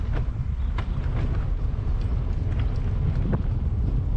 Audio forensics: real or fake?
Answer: real